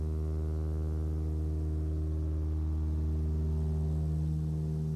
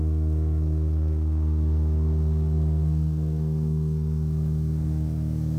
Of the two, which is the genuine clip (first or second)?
first